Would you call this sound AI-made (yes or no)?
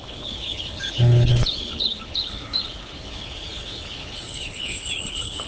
yes